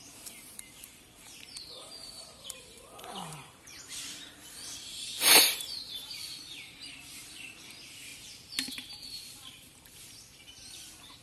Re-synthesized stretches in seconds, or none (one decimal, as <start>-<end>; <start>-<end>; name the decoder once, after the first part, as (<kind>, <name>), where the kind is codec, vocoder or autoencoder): 0.0-8.1 (vocoder, BigVGAN v2); 8.7-11.2